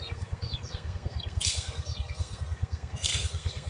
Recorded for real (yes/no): no